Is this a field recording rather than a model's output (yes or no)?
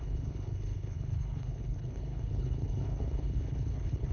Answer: no